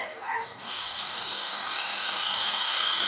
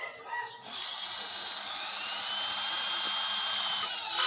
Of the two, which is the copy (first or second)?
first